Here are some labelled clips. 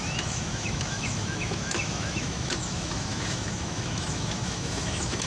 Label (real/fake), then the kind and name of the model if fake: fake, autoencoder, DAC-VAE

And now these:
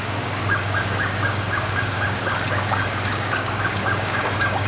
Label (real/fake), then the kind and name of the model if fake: fake, codec, DAC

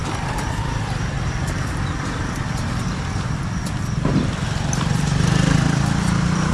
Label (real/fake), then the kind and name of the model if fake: fake, vocoder, BigVGAN v2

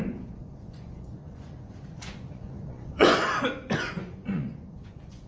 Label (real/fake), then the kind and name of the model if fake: fake, vocoder, Vocos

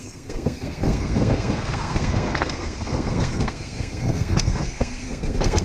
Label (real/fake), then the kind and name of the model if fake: fake, codec, SNAC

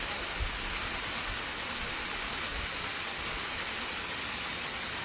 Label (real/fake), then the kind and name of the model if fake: real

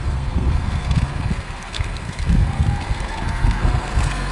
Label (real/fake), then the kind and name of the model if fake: fake, codec, SNAC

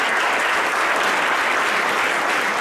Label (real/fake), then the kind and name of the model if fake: fake, vocoder, BigVGAN v2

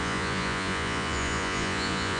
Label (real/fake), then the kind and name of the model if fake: fake, vocoder, Vocos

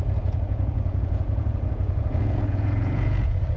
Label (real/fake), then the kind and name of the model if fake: fake, vocoder, Vocos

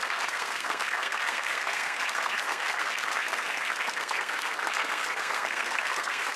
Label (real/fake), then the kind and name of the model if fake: fake, codec, SNAC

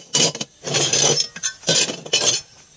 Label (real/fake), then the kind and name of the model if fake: real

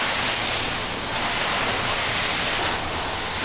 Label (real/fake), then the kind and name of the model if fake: real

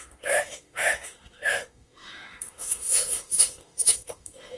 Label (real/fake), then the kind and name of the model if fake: fake, autoencoder, DAC-VAE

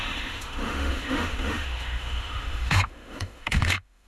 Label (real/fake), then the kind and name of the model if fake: fake, autoencoder, DAC-VAE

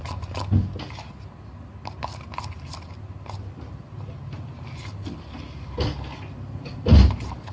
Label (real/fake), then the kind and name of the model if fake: real